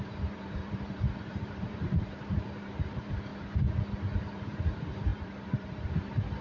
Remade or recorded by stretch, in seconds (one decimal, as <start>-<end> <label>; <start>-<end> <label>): 0.0-3.3 remade; 3.3-4.2 recorded; 4.2-6.4 remade